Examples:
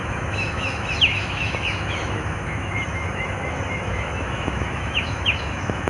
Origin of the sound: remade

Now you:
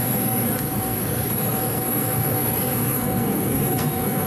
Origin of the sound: remade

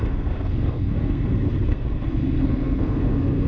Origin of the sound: remade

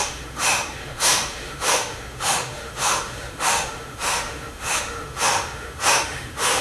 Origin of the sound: remade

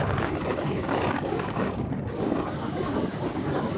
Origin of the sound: remade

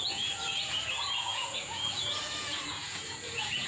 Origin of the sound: remade